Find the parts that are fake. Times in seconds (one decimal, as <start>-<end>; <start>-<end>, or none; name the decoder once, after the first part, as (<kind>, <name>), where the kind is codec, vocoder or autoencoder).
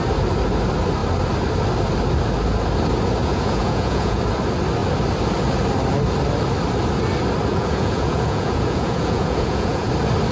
3.2-4.2 (vocoder, Vocos); 7.5-9.9